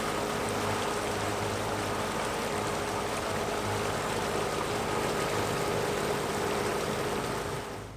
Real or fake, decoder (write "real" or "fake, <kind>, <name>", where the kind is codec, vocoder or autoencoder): real